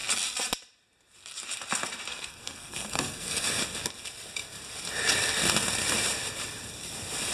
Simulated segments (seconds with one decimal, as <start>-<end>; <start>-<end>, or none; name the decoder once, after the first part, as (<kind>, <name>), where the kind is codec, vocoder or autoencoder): 2.1-3.6 (codec, SNAC)